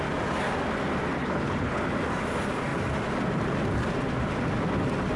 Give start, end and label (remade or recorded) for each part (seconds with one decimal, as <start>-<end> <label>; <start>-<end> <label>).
0.0-1.2 recorded; 1.2-1.8 remade; 1.8-5.2 recorded